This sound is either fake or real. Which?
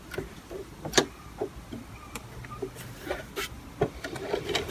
fake